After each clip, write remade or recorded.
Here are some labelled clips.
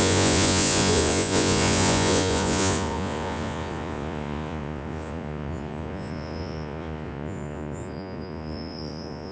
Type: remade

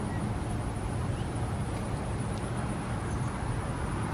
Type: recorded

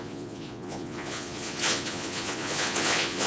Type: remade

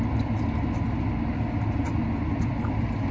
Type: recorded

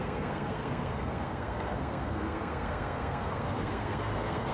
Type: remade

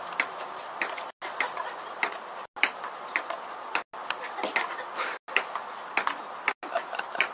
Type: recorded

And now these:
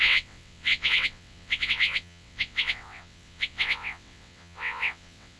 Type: remade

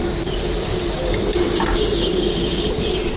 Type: recorded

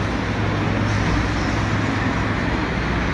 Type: recorded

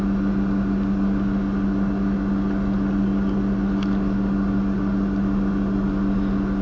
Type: recorded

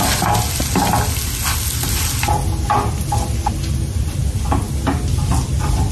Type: recorded